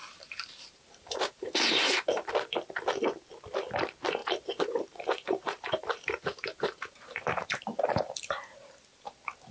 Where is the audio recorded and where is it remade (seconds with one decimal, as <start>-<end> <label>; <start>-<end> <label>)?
0.0-2.3 remade; 2.3-4.2 recorded; 4.2-8.7 remade; 8.7-9.5 recorded